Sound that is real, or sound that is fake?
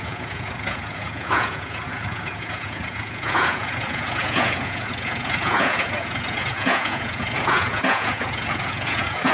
fake